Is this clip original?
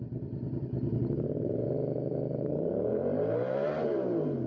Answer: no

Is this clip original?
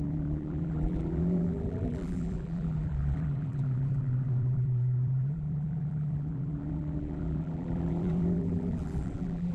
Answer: no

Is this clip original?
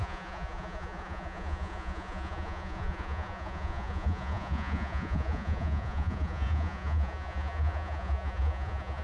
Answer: no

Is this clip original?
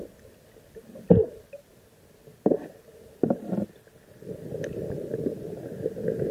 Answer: no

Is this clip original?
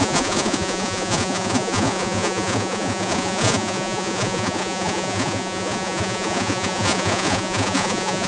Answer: no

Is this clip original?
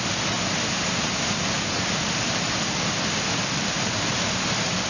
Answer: yes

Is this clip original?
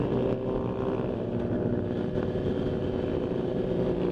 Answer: yes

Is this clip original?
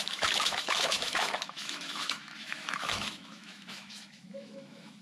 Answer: no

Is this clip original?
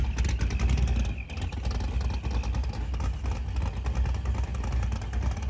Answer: yes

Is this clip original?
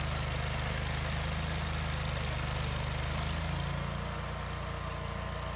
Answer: yes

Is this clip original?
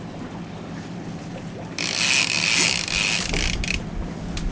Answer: yes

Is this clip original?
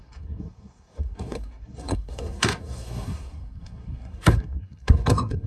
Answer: no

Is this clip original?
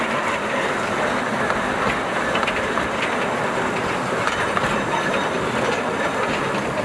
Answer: no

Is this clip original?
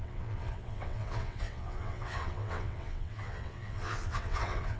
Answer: no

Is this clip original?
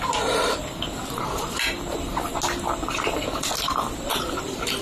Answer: yes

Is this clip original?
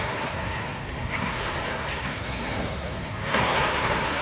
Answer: no